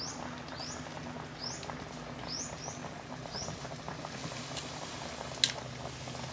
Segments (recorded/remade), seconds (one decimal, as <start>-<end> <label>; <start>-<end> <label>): 0.0-2.8 recorded; 2.8-3.8 remade; 3.8-4.2 recorded; 4.2-5.3 remade; 5.3-6.3 recorded